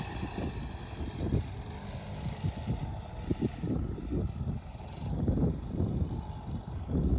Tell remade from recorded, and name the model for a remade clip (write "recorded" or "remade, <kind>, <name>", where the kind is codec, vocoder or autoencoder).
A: recorded